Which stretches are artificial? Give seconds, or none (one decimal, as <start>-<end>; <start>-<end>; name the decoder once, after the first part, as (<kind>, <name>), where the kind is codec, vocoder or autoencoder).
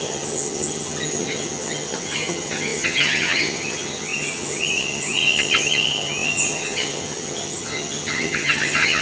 0.0-9.0 (vocoder, HiFi-GAN)